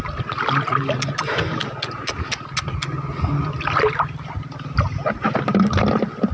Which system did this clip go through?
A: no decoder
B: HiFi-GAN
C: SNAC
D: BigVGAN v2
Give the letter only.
A